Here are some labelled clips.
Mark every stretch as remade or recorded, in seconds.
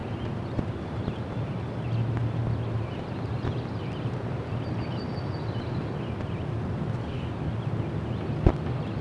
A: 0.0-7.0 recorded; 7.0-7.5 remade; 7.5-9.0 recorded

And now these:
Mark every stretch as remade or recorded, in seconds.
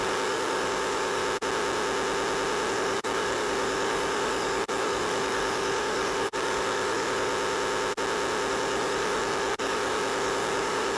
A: 0.0-1.2 remade; 1.2-2.7 recorded; 2.7-7.3 remade; 7.3-8.5 recorded; 8.5-11.0 remade